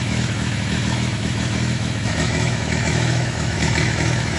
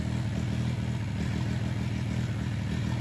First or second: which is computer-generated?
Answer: first